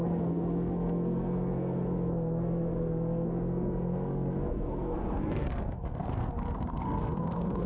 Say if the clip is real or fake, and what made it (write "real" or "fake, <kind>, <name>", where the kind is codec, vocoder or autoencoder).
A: fake, codec, SNAC